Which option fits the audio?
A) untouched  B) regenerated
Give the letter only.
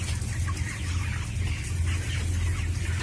A